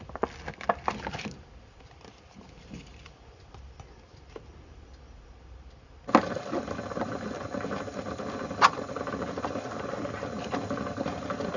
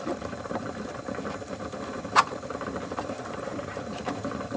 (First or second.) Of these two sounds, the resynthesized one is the second